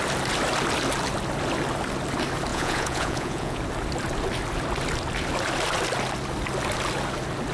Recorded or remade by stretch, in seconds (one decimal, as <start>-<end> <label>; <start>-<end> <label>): 0.0-2.5 recorded; 2.5-3.6 remade; 3.6-7.5 recorded

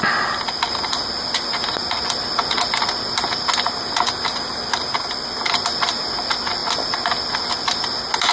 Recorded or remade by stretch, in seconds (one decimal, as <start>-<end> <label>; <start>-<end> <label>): 0.0-8.3 recorded

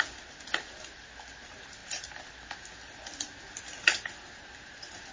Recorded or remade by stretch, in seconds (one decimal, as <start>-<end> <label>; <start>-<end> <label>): 0.0-5.1 recorded